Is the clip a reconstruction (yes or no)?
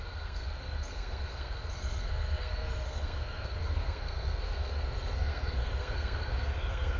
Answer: yes